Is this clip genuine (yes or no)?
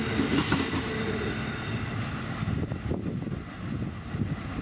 yes